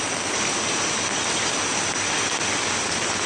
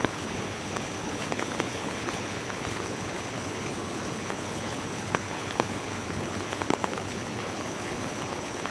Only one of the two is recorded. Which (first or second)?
first